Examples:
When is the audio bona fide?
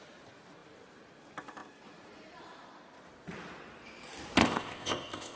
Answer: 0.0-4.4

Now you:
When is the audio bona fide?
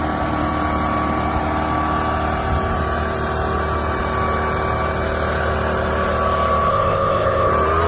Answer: 0.0-6.7; 7.5-7.9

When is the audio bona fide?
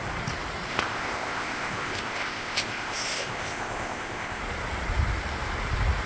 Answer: 0.0-0.7; 4.4-6.1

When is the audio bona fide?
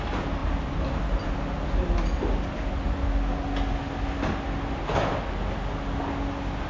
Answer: 0.0-6.7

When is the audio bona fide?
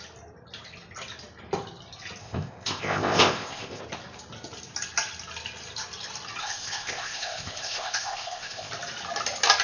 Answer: 0.0-2.2; 3.8-6.4; 8.7-9.6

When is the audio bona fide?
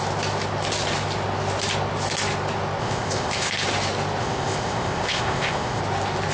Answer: 0.0-2.8; 3.5-4.2; 5.8-6.3